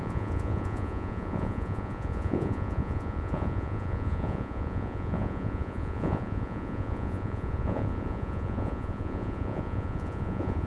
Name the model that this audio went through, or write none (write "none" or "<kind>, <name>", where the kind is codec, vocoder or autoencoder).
vocoder, Vocos